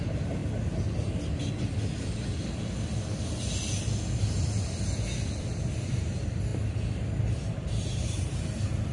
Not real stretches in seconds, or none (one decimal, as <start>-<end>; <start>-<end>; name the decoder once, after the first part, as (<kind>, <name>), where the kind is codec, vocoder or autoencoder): 0.0-0.4 (vocoder, BigVGAN v2); 5.4-6.5; 7.2-8.9

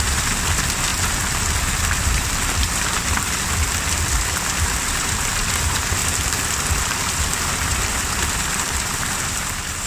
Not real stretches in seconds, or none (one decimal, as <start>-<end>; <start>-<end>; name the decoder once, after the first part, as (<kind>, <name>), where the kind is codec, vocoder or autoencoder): 0.0-6.0 (vocoder, BigVGAN v2); 6.8-9.9

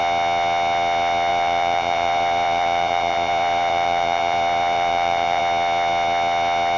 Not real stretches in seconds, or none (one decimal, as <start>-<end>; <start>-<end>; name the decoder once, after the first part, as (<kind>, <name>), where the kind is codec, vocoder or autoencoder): 1.3-5.4 (vocoder, BigVGAN v2)

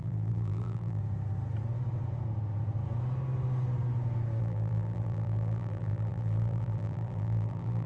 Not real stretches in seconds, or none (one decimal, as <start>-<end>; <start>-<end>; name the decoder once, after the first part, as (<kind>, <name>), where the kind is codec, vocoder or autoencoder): 0.0-1.0 (vocoder, BigVGAN v2); 4.4-7.9

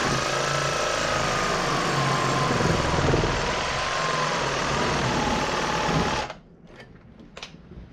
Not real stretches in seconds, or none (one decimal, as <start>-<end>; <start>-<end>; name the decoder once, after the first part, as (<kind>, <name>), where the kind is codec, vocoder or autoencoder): 4.3-5.6 (vocoder, BigVGAN v2)

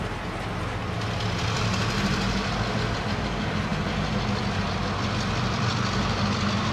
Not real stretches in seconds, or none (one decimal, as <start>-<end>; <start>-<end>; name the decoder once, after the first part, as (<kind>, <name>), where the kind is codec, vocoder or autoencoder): none